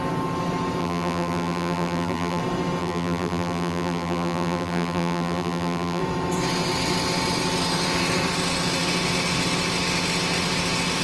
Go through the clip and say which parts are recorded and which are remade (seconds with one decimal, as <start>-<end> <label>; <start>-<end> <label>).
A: 0.0-0.8 recorded; 0.8-2.4 remade; 2.4-2.8 recorded; 2.8-6.0 remade; 6.0-11.0 recorded